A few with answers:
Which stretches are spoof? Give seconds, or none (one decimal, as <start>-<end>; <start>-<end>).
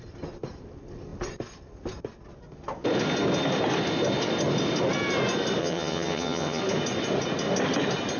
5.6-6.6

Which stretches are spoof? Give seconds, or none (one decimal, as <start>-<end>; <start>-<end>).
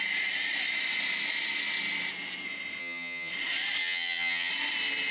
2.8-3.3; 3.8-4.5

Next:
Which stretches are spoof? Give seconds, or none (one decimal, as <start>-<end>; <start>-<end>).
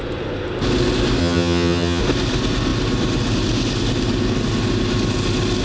1.2-2.0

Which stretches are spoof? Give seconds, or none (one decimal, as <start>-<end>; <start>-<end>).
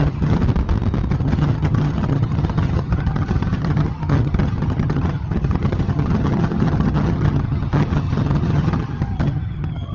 0.0-0.4; 1.1-9.9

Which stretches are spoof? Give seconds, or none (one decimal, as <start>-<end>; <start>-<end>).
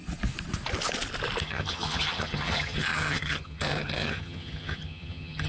1.4-5.5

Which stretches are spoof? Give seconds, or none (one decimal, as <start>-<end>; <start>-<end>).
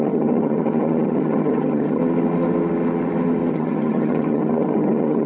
0.0-2.0; 3.5-5.3